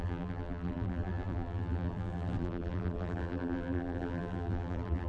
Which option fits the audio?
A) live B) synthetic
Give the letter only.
B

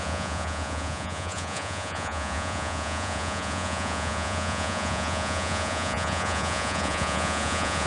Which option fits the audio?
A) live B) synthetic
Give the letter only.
B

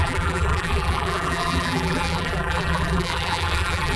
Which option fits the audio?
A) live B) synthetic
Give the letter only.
B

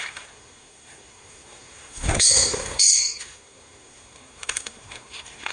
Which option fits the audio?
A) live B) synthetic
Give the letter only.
B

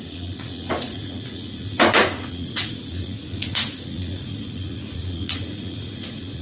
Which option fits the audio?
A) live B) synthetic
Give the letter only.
B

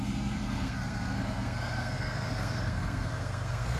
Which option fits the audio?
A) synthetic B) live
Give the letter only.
A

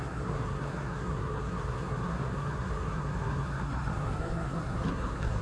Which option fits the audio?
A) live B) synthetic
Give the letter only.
B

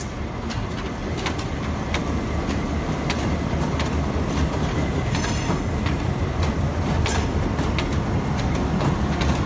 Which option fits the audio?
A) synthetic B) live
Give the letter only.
B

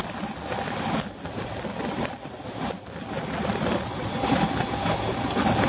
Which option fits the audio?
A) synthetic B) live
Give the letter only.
B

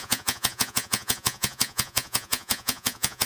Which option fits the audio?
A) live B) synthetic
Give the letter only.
B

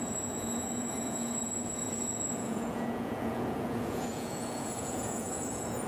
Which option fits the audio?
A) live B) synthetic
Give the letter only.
B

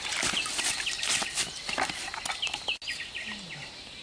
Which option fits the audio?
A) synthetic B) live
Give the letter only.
B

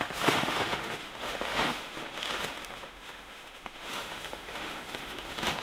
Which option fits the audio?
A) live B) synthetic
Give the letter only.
B